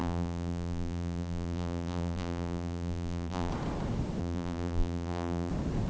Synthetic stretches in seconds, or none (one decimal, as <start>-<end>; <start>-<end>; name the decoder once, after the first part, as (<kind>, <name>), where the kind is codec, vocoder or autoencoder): 0.0-3.5 (vocoder, BigVGAN v2); 4.2-5.5